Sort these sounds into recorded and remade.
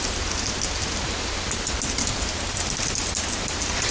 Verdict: recorded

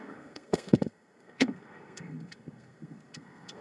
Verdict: remade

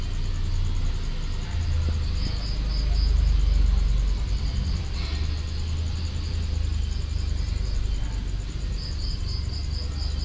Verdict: recorded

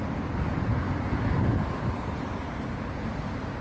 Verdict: remade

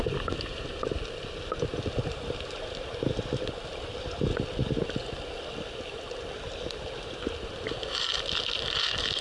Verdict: recorded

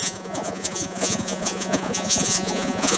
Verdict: remade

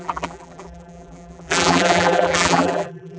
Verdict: remade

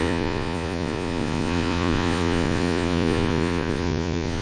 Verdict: remade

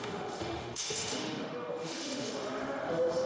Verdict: remade